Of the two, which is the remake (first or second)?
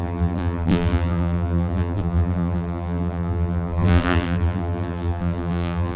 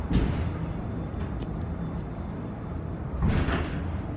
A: first